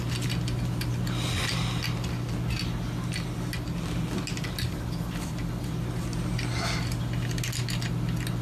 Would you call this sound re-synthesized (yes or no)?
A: no